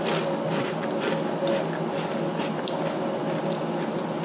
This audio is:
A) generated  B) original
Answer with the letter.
B